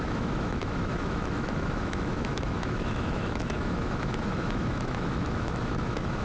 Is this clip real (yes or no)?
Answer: no